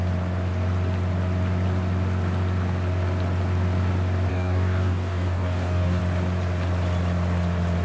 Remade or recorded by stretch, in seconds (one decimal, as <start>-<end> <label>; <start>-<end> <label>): 0.0-4.3 recorded; 4.3-6.0 remade; 6.0-7.8 recorded